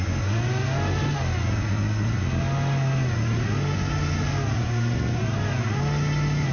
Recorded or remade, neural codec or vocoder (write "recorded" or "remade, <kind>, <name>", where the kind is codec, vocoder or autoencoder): recorded